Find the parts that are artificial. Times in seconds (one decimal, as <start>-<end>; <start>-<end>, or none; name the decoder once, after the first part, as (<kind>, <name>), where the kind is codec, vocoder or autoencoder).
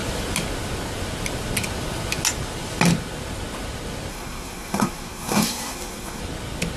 4.1-6.2 (codec, SNAC)